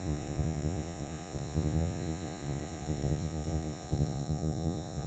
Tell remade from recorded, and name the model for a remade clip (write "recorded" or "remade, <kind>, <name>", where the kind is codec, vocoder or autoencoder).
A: remade, vocoder, Vocos